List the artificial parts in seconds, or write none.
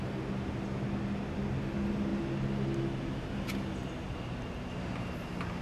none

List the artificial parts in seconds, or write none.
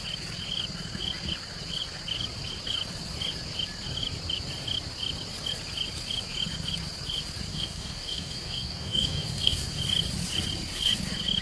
7.5-9.8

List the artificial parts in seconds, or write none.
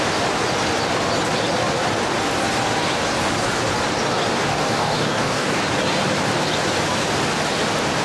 4.5-5.6